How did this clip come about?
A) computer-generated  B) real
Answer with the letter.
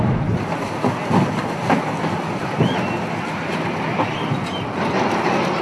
B